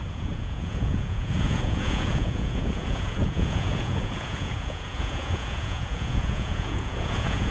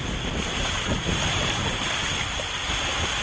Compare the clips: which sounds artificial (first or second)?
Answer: first